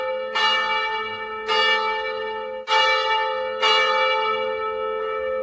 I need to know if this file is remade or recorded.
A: recorded